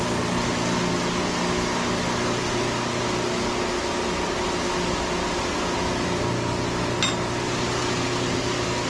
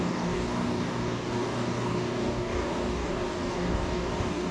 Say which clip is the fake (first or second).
second